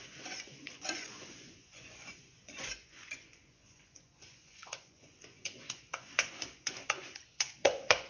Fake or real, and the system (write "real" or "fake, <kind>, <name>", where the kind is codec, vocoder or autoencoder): fake, vocoder, Vocos